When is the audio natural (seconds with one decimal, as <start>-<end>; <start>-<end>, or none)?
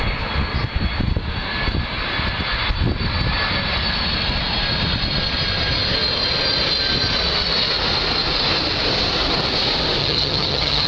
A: 0.0-10.0